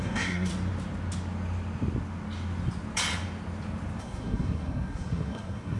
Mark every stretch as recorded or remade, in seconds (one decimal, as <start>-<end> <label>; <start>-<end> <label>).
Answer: 0.0-0.5 remade; 0.5-4.0 recorded; 4.0-5.8 remade